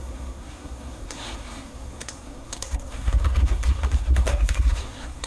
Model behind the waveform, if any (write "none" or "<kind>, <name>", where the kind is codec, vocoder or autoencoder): codec, SNAC